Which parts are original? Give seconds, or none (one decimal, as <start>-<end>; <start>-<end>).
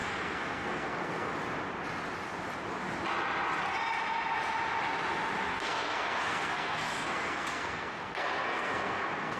1.3-5.5